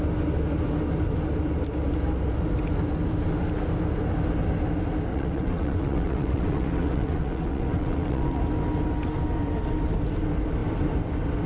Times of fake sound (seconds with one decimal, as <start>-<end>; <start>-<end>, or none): 5.1-8.4